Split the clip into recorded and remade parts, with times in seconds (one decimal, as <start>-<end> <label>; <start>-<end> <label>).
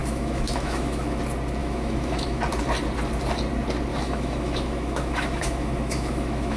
0.0-1.2 remade; 1.2-1.6 recorded; 1.6-2.4 remade; 2.4-3.9 recorded; 3.9-6.6 remade